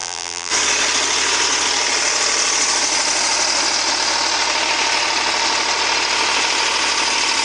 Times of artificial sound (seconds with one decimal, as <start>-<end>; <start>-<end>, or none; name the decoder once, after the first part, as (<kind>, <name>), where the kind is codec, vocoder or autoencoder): 0.0-0.5 (vocoder, BigVGAN v2)